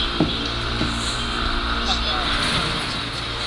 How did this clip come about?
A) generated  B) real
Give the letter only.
B